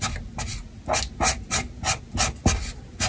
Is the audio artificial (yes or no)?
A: no